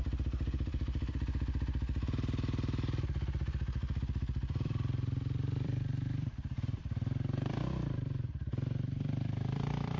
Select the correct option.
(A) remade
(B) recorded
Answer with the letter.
A